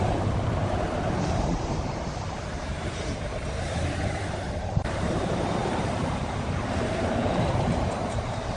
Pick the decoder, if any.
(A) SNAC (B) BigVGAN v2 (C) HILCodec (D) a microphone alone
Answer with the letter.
B